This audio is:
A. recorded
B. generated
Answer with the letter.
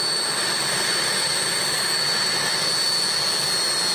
A